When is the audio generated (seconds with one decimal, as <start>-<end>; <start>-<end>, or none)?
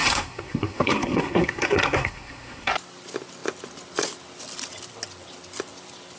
0.0-2.7